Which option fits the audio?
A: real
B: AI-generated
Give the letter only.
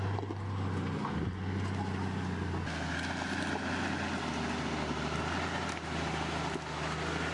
A